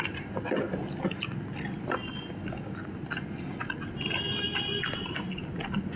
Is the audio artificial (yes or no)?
no